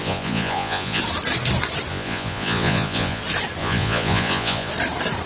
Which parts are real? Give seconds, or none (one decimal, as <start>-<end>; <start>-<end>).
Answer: 1.0-1.9; 3.2-3.6; 4.7-5.3